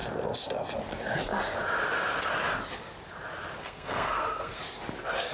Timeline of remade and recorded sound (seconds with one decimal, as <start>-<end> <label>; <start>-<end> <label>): 0.0-3.6 recorded; 3.6-4.6 remade; 4.6-5.3 recorded